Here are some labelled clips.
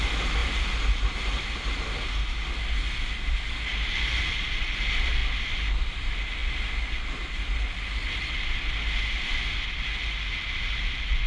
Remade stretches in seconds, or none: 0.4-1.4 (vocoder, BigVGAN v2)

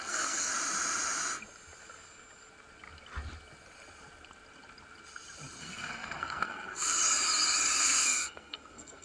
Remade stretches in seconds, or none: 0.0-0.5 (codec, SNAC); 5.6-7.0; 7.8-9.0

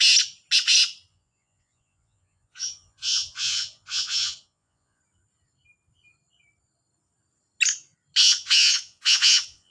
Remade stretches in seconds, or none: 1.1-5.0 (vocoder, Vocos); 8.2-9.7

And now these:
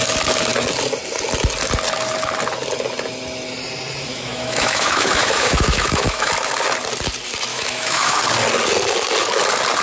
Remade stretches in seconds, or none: 4.1-6.3 (autoencoder, DAC-VAE); 7.5-8.2

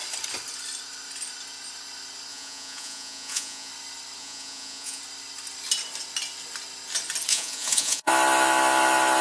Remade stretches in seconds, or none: 2.3-3.7 (vocoder, Vocos); 4.2-5.0; 7.3-8.1

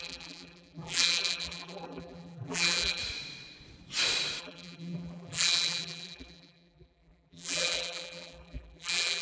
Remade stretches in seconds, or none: 0.0-3.0 (vocoder, BigVGAN v2); 4.4-9.2

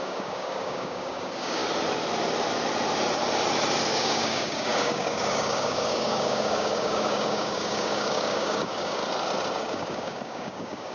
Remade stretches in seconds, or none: 0.0-1.6 (codec, DAC); 3.9-9.0; 9.6-10.9